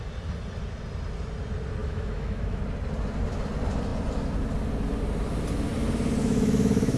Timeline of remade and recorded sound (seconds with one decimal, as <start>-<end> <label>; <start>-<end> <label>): 0.0-1.8 recorded; 1.8-2.6 remade; 2.6-6.2 recorded; 6.2-7.0 remade